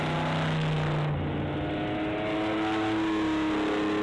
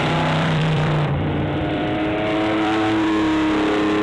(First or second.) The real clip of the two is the first